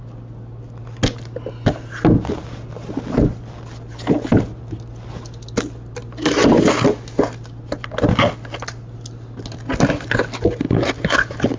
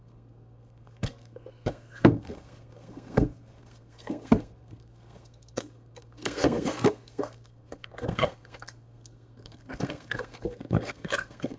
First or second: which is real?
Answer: first